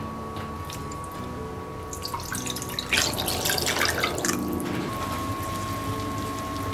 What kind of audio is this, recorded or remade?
recorded